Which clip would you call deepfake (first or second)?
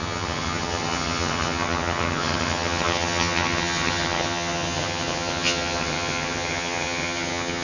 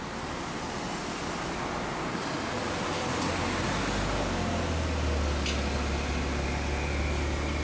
first